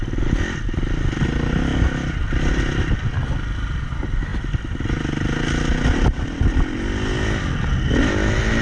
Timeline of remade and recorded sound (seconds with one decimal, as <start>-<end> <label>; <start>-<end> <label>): 0.0-8.6 recorded